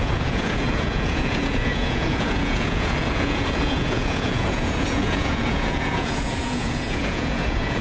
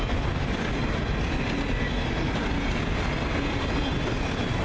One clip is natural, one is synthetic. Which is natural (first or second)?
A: second